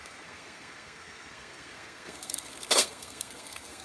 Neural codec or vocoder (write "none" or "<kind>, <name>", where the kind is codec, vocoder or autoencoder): codec, SNAC